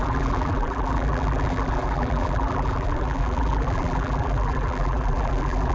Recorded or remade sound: remade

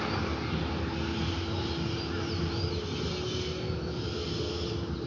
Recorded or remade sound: recorded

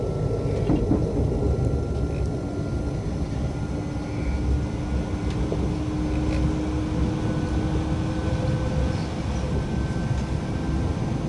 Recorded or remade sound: recorded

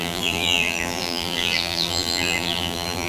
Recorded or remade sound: remade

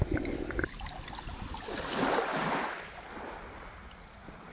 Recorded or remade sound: recorded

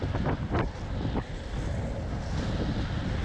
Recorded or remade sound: recorded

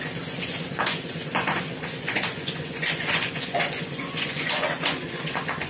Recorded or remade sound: remade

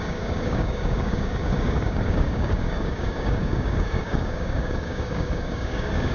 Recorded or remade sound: remade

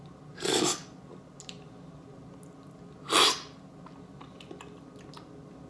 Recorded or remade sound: recorded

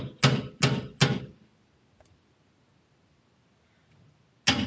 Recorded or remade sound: recorded